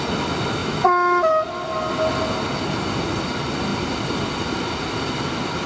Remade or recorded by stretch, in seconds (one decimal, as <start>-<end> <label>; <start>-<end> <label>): 0.0-0.6 recorded; 0.6-1.3 remade; 1.3-5.7 recorded